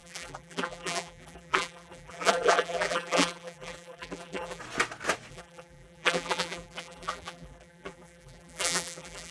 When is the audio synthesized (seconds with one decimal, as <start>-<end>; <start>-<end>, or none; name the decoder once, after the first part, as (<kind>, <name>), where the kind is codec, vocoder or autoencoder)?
0.0-4.6 (vocoder, BigVGAN v2); 5.3-9.3